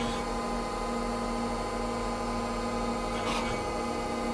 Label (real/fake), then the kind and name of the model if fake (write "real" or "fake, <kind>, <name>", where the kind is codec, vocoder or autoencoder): real